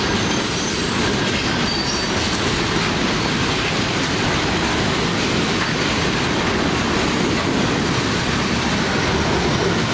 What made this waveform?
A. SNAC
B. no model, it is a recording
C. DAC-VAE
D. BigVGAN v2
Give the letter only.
B